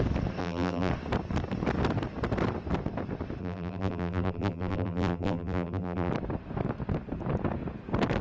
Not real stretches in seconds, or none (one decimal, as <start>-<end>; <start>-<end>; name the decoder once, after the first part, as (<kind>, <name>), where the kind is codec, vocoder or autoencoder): 0.4-0.9 (vocoder, BigVGAN v2); 3.4-6.1